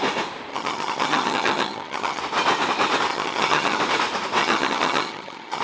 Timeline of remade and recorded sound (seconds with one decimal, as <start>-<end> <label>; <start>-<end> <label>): 0.0-0.5 recorded; 0.5-2.2 remade; 2.2-3.1 recorded; 3.1-3.8 remade; 3.8-4.4 recorded; 4.4-5.6 remade

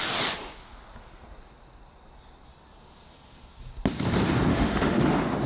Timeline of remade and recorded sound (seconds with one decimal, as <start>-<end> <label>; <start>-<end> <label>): 0.0-4.5 recorded; 4.5-5.1 remade; 5.1-5.5 recorded

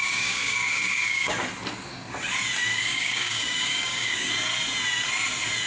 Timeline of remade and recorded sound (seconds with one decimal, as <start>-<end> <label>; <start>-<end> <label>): 0.0-1.3 remade; 1.3-2.7 recorded; 2.7-4.3 remade; 4.3-5.7 recorded